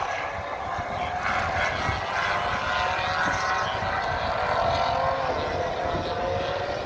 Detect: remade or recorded recorded